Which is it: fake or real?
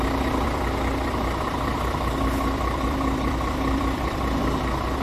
fake